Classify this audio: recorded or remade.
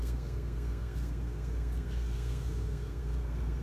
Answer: remade